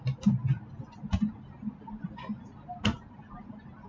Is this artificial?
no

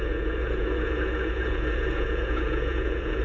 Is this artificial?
yes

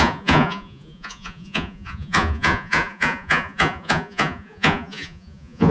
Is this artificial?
yes